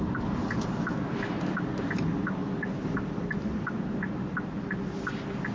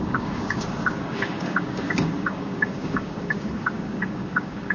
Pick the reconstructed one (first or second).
second